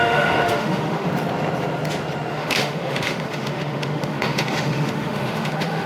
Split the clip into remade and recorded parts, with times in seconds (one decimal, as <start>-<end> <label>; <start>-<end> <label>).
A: 0.0-1.1 remade; 1.1-2.3 recorded; 2.3-5.9 remade

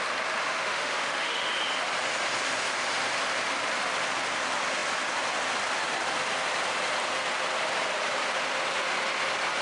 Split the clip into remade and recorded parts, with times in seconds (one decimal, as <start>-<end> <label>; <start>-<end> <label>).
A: 0.0-0.4 recorded; 0.4-1.5 remade; 1.5-9.6 recorded